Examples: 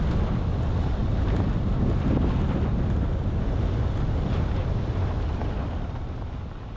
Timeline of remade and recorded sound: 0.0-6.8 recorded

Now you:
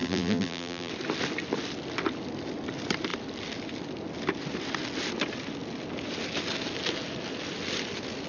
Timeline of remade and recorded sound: 0.0-0.9 remade; 0.9-8.3 recorded

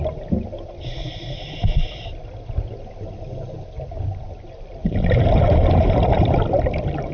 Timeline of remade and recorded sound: 0.0-4.8 recorded; 4.8-6.2 remade; 6.2-7.1 recorded

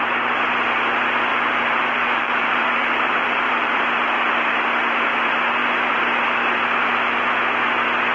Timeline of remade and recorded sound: 0.0-1.3 recorded; 1.3-3.8 remade; 3.8-5.6 recorded; 5.6-6.2 remade; 6.2-8.1 recorded

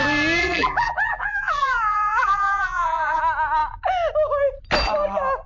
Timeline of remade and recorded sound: 0.0-0.4 recorded; 0.4-3.2 remade; 3.2-5.5 recorded

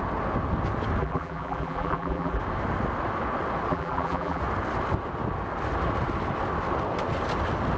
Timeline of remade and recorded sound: 0.0-1.0 recorded; 1.0-2.4 remade; 2.4-3.7 recorded; 3.7-4.4 remade; 4.4-7.8 recorded

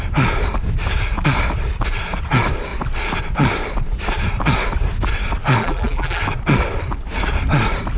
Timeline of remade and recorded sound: 0.0-5.6 recorded; 5.6-6.2 remade; 6.2-8.0 recorded